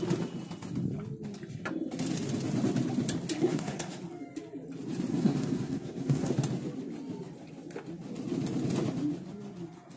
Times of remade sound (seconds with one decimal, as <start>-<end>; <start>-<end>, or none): 3.4-4.0; 5.1-6.3